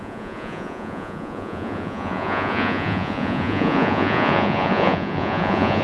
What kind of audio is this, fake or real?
fake